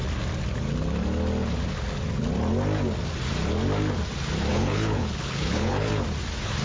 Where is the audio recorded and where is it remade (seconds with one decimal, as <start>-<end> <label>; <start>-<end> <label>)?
0.0-4.5 recorded; 4.5-5.9 remade; 5.9-6.6 recorded